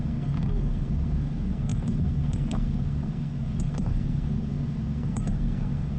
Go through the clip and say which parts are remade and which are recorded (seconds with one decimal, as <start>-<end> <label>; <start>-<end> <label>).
0.0-6.0 remade